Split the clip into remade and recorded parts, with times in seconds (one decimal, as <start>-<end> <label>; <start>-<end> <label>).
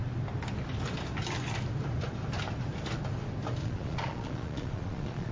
0.0-3.6 recorded; 3.6-5.3 remade